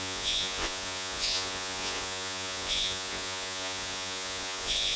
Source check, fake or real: fake